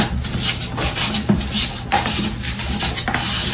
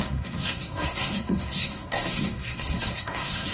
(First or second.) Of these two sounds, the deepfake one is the second